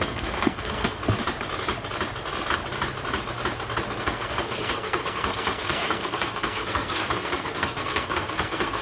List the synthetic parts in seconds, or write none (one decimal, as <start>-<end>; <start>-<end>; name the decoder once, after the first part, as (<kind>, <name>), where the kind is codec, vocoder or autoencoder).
0.0-1.0 (codec, SNAC); 4.0-8.8